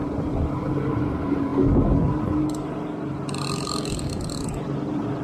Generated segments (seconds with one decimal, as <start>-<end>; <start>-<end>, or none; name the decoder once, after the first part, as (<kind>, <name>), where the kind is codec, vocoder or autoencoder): 0.0-0.7 (vocoder, BigVGAN v2)